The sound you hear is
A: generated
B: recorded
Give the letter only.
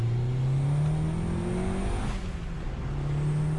B